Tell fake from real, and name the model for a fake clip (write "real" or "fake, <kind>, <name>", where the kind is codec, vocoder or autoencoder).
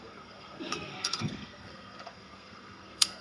fake, codec, SNAC